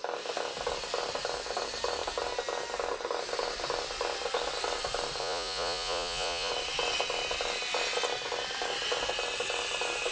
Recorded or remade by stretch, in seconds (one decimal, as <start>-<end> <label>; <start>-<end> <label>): 0.0-5.2 recorded; 5.2-6.5 remade; 6.5-10.1 recorded